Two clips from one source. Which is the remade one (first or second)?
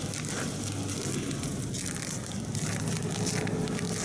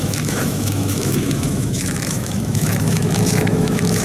second